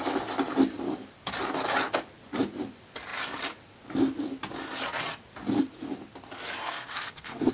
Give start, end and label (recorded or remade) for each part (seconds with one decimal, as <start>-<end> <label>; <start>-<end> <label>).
0.0-6.6 recorded; 6.6-7.5 remade